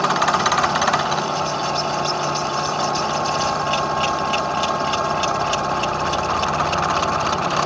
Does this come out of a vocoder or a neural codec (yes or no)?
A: no